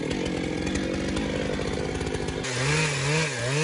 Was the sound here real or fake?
real